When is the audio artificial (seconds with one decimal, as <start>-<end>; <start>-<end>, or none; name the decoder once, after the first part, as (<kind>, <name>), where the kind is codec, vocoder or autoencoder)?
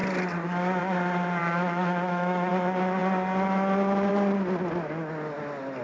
1.4-2.5 (autoencoder, DAC-VAE)